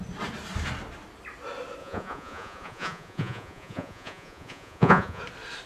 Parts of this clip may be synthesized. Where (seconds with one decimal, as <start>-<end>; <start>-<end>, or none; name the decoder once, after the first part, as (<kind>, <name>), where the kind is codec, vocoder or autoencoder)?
1.8-5.2 (vocoder, Vocos)